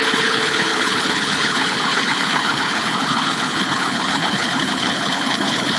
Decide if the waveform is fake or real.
fake